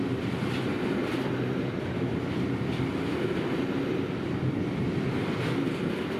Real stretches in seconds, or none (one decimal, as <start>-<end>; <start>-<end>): 0.0-0.7; 2.6-6.2